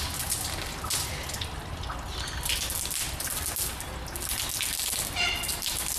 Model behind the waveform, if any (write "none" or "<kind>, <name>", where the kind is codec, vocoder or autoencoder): none